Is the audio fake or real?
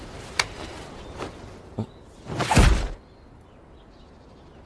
real